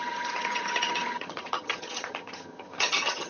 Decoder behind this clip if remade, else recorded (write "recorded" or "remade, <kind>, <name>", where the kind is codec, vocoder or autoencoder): remade, vocoder, HiFi-GAN